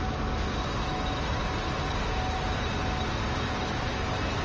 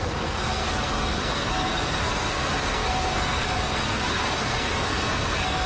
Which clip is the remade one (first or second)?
second